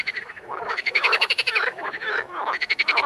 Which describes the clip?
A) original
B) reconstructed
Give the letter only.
B